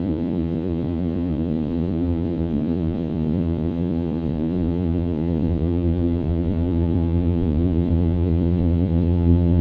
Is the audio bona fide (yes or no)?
no